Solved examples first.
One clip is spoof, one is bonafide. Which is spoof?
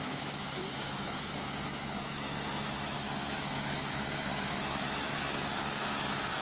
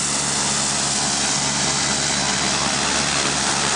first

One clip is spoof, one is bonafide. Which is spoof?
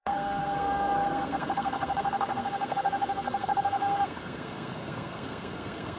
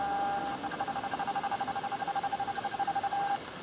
first